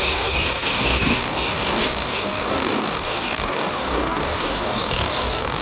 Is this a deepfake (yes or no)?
yes